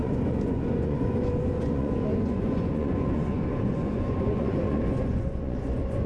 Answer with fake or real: fake